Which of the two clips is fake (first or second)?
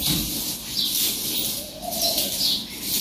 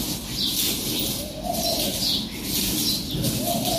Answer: first